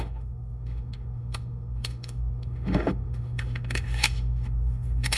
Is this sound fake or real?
fake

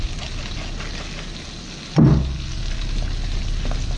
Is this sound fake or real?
real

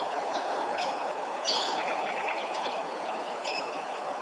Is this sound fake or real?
fake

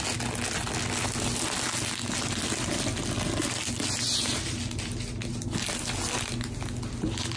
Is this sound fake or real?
real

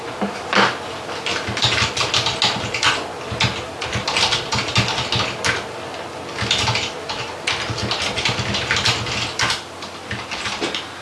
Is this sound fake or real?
real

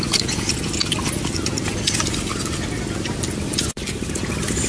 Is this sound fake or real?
real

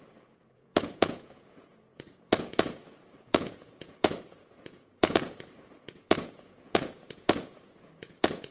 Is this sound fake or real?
fake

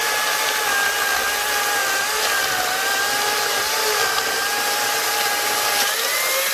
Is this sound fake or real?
real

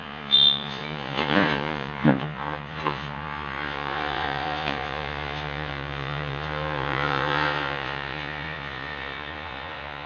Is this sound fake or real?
fake